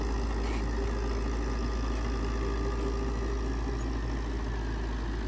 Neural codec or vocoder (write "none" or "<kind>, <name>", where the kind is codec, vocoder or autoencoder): none